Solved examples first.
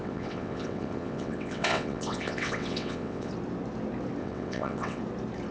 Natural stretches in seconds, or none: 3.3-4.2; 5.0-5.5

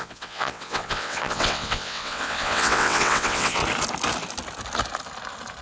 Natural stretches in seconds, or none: 3.6-5.6

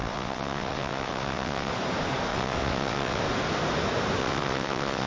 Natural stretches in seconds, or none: 1.7-2.3; 3.2-4.2

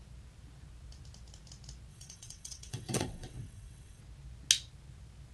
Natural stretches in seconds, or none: 0.0-1.9; 4.0-5.3

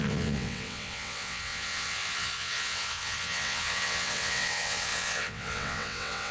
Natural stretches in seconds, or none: none

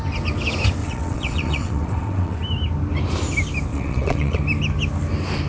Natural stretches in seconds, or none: 0.0-0.8; 2.4-3.7; 4.4-5.5